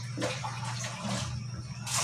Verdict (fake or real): real